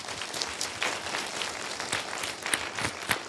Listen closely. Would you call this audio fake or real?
real